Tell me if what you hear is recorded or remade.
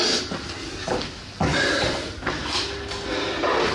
recorded